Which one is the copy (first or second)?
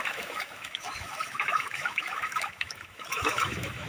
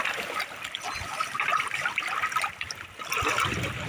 first